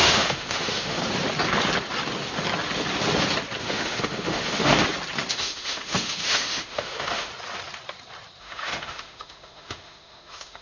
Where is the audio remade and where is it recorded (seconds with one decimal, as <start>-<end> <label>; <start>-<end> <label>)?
0.0-1.0 remade; 1.0-3.6 recorded; 3.6-4.7 remade; 4.7-5.3 recorded; 5.3-7.3 remade; 7.3-8.4 recorded; 8.4-10.6 remade